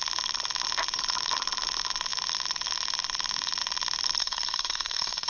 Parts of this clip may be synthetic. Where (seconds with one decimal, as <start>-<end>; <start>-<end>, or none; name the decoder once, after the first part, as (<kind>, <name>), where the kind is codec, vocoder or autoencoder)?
4.2-5.3 (codec, SNAC)